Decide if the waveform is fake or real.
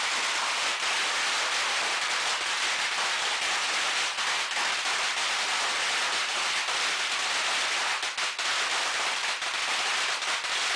real